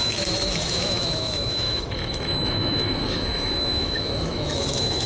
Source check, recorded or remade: remade